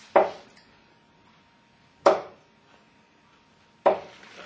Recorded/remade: recorded